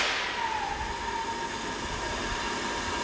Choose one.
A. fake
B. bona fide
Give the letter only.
B